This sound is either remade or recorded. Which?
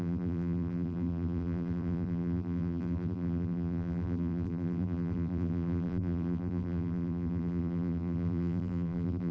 remade